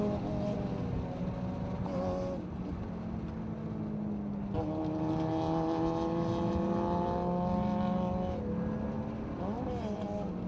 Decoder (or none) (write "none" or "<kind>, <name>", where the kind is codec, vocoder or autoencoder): none